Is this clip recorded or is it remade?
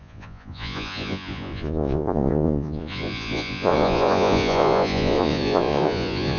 remade